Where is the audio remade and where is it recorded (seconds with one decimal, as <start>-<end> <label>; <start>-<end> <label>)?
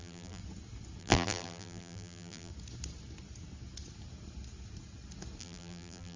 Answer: 0.0-0.4 remade; 0.4-1.0 recorded; 1.0-2.5 remade; 2.5-5.4 recorded; 5.4-6.2 remade